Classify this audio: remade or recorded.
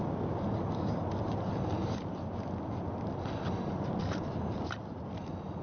recorded